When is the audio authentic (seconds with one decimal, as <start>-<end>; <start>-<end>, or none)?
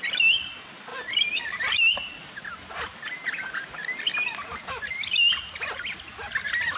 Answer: 0.0-0.9; 2.3-6.8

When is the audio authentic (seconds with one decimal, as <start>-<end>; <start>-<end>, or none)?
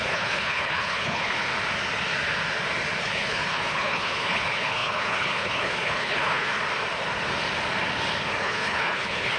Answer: 1.5-3.0; 6.5-8.4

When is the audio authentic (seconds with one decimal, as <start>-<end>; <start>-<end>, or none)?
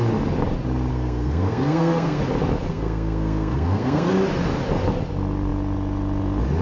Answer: 0.0-0.9; 2.2-2.7; 4.1-6.6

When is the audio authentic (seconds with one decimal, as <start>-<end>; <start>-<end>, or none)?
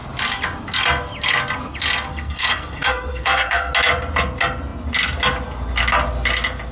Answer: 0.0-2.1; 3.7-6.7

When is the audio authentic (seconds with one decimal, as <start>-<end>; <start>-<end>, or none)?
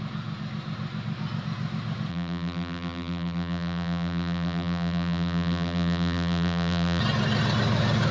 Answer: 0.0-2.1; 7.0-8.1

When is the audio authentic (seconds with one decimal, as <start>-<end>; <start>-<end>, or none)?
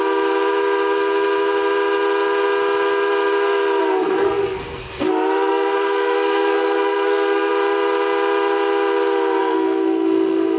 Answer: 0.0-3.8; 5.1-5.5; 7.5-9.4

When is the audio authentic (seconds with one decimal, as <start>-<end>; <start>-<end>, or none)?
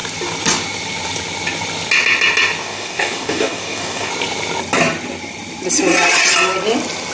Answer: 0.0-2.6; 4.1-7.1